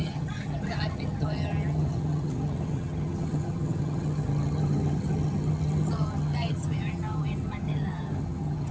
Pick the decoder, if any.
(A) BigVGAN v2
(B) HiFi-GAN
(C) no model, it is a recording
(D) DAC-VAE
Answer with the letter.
B